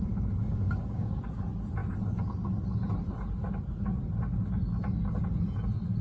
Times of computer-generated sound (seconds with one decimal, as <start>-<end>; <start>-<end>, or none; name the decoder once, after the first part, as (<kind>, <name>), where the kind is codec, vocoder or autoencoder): 0.4-1.2 (codec, DAC)